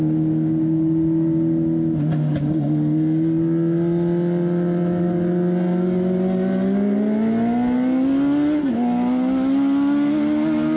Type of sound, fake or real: real